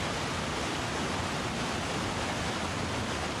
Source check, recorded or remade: recorded